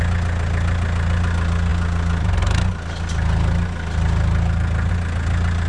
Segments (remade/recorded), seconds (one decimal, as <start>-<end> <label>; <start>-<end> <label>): 0.0-5.7 recorded